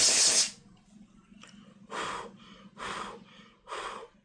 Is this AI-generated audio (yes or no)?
no